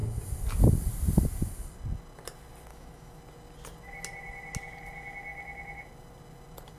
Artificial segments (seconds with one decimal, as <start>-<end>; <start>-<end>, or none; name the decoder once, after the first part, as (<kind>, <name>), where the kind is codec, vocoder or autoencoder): 2.7-3.2 (autoencoder, DAC-VAE)